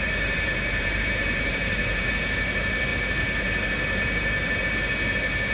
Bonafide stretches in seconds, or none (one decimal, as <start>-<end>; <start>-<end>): 2.1-5.5